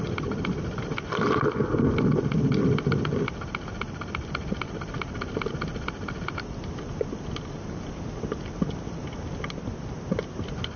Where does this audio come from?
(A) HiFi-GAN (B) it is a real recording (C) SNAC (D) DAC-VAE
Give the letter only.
B